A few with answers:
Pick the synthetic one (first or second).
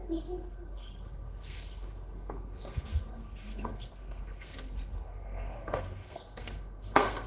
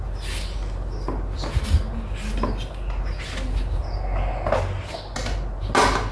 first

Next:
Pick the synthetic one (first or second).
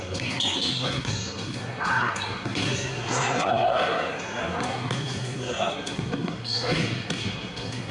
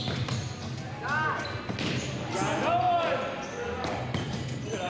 first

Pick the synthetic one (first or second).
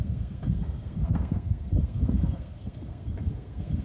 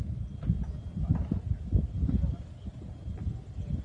first